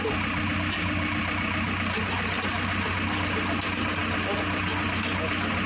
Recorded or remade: recorded